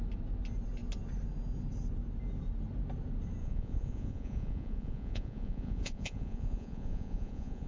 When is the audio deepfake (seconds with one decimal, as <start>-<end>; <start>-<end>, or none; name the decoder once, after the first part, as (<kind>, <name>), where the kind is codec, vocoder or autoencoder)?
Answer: 3.4-7.7 (vocoder, Vocos)

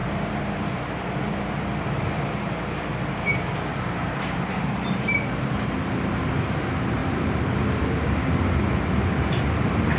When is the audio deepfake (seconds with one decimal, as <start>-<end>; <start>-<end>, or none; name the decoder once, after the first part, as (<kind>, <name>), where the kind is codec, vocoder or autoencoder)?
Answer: 0.0-2.3 (vocoder, BigVGAN v2); 3.7-5.7; 7.0-8.4

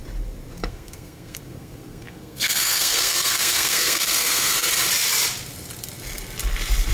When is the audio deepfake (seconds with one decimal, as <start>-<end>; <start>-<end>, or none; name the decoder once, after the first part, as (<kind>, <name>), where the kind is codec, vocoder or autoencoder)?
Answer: 0.6-4.7 (codec, SNAC)

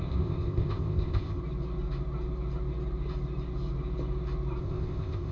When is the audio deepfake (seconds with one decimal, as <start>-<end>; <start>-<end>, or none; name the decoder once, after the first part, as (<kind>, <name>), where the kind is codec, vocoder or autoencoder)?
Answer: 0.0-1.4 (codec, ZipCodec); 4.6-5.3